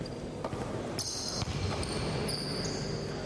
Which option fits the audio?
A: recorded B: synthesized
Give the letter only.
A